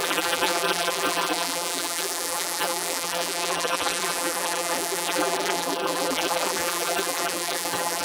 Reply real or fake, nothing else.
fake